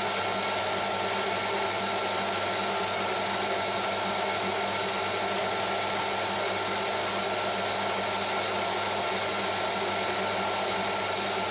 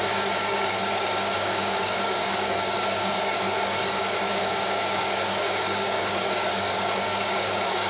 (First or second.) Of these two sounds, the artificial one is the second